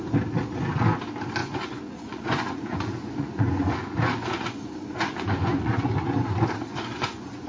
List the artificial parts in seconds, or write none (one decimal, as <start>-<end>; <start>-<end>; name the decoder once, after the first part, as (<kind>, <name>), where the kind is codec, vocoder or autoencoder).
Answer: 1.4-5.9 (vocoder, Vocos); 6.7-7.5